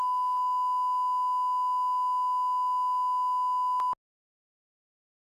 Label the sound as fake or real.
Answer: real